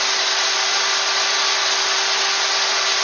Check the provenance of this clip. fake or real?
real